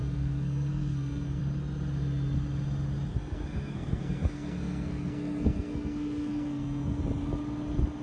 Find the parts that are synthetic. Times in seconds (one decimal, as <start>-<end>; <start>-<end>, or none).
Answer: 0.0-1.4; 3.1-7.0